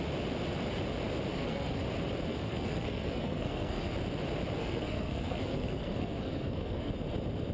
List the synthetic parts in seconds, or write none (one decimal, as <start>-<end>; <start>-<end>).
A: 1.3-1.8; 2.3-3.9; 4.6-6.9